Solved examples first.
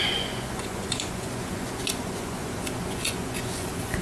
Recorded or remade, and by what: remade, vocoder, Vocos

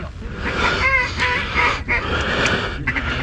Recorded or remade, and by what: recorded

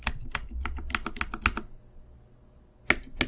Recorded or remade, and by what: recorded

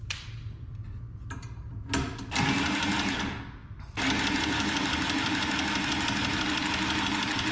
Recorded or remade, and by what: recorded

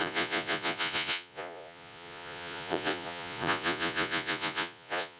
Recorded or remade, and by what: remade, vocoder, Vocos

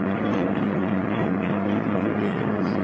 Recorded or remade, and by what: remade, vocoder, Vocos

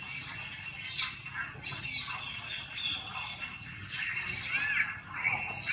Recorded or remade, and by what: recorded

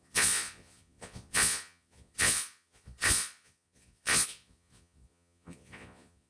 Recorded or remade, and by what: remade, vocoder, Vocos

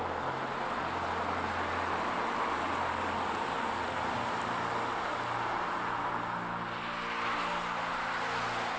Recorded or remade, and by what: recorded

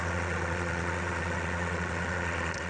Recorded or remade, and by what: remade, vocoder, Vocos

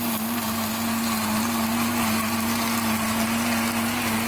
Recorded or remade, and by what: recorded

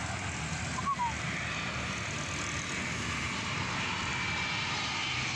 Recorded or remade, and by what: recorded